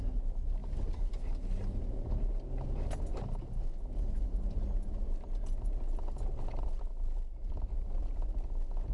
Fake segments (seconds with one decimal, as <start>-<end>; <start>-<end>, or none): 6.9-7.5